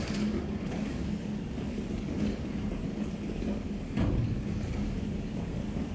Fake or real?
fake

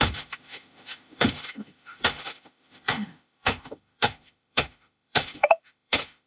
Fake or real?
fake